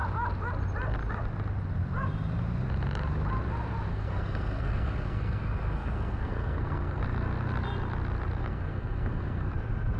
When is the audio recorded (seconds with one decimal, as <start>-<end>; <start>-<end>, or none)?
0.0-3.9; 7.0-8.4; 9.5-10.0